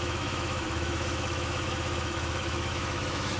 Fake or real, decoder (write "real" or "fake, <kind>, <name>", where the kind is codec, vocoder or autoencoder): fake, autoencoder, DAC-VAE